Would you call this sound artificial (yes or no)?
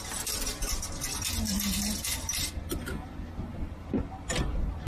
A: no